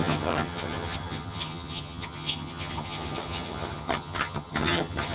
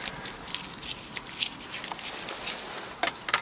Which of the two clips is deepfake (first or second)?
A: first